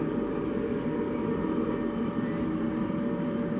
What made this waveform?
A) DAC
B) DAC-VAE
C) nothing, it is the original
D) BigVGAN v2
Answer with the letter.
C